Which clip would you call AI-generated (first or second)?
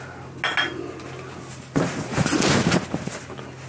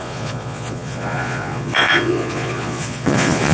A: second